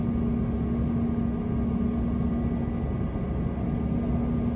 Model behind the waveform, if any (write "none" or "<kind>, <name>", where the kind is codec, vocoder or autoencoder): none